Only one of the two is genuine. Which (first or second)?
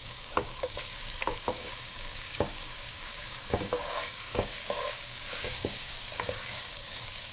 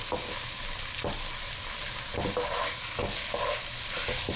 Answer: second